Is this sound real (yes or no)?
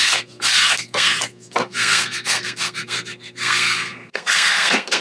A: no